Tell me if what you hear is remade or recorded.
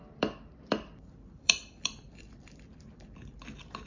remade